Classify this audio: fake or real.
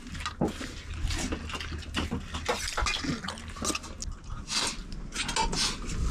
real